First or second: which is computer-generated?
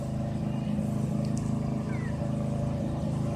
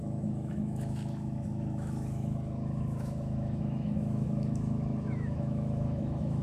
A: second